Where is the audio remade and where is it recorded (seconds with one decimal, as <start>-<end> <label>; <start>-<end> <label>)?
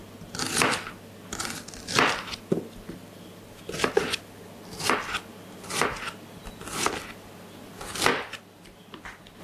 0.0-8.1 recorded; 8.1-9.4 remade